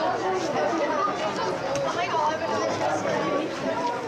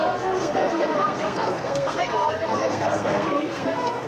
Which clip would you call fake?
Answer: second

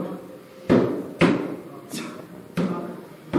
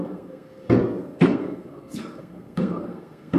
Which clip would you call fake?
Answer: second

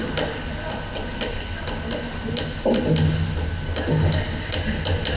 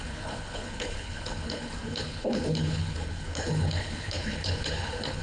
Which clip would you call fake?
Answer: second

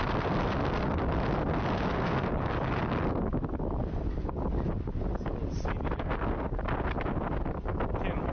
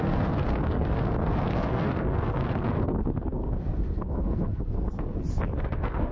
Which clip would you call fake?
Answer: second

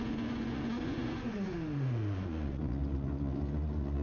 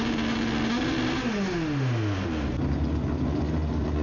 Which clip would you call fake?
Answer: first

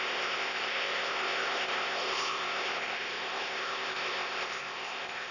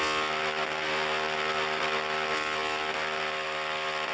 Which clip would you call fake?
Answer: first